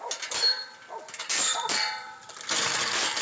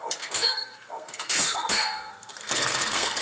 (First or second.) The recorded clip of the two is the first